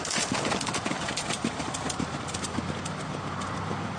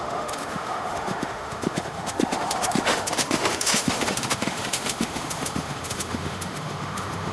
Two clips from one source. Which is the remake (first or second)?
second